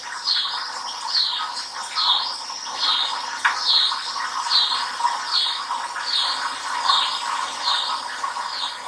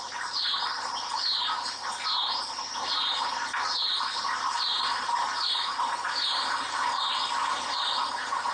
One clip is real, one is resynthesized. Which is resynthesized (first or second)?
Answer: second